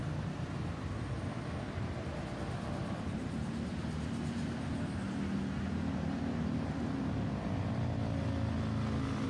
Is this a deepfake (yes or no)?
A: no